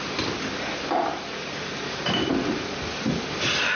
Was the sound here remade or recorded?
recorded